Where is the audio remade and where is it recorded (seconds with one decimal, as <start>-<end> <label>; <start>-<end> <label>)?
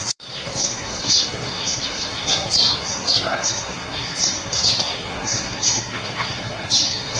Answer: 0.0-7.2 remade